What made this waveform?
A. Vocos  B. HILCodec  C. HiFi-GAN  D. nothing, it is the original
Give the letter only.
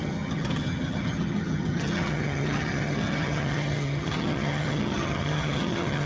C